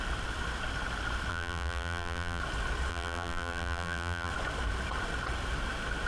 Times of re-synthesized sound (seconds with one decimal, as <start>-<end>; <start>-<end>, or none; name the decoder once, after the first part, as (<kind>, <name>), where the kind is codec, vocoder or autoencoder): 1.3-2.4 (vocoder, BigVGAN v2); 2.9-4.3